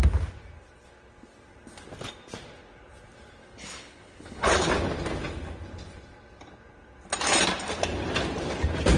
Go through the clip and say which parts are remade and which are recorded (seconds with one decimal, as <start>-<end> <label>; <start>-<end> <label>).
0.0-3.4 recorded; 3.4-4.7 remade; 4.7-9.0 recorded

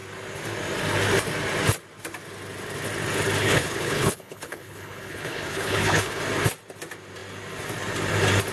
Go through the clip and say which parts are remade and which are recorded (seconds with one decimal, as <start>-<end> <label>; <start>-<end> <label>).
0.0-3.4 recorded; 3.4-6.2 remade; 6.2-8.5 recorded

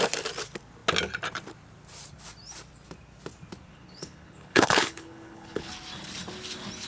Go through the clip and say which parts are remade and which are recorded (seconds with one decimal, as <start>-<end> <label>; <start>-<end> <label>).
0.0-3.7 recorded; 3.7-5.7 remade; 5.7-6.9 recorded

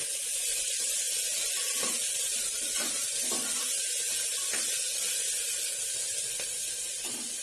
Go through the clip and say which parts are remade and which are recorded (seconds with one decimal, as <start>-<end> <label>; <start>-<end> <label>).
0.0-7.4 recorded

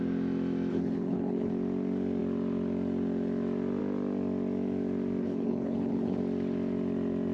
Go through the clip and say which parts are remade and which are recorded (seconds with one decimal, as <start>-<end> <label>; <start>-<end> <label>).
0.0-0.7 recorded; 0.7-1.5 remade; 1.5-5.2 recorded; 5.2-6.2 remade; 6.2-7.3 recorded

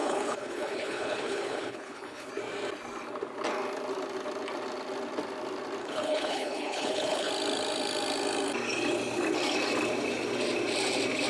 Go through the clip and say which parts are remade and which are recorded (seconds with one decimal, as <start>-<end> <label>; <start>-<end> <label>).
0.0-2.3 remade; 2.3-5.8 recorded; 5.8-7.3 remade; 7.3-11.3 recorded

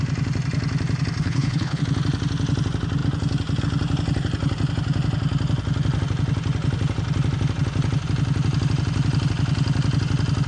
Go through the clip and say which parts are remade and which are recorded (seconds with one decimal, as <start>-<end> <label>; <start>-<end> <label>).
0.0-1.2 recorded; 1.2-1.8 remade; 1.8-10.5 recorded

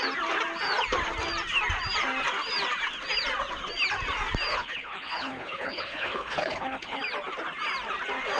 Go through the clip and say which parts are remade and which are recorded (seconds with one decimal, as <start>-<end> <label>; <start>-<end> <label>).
0.0-4.5 recorded; 4.5-7.0 remade; 7.0-8.4 recorded